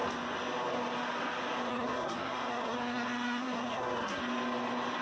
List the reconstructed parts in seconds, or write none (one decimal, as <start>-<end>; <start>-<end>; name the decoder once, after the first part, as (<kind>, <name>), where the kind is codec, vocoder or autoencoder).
1.7-4.2 (codec, SNAC)